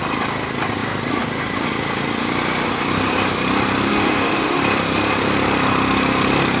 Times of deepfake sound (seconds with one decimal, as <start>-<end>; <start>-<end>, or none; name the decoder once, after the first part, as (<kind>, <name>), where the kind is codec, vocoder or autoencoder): 3.9-4.6 (autoencoder, DAC-VAE)